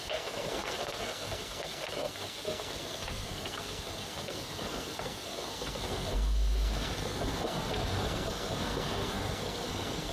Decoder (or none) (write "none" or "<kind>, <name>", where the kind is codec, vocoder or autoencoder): codec, SNAC